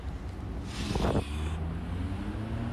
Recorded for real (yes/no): yes